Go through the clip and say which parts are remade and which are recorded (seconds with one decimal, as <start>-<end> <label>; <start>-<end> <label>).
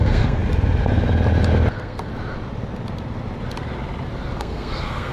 0.0-0.4 remade; 0.4-1.7 recorded; 1.7-2.1 remade; 2.1-4.4 recorded; 4.4-5.1 remade